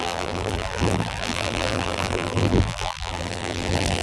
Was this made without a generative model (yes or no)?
no